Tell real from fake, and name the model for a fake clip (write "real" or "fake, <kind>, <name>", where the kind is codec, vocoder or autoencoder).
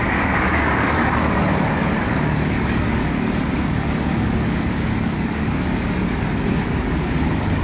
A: fake, codec, DAC